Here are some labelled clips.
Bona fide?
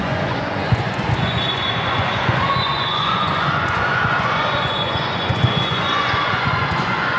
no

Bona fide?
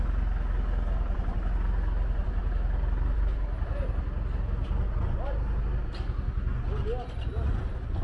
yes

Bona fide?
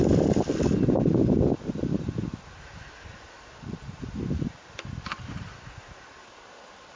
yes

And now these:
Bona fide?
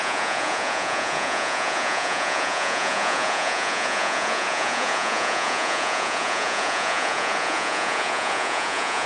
no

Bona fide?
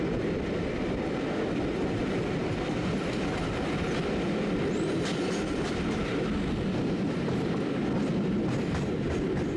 yes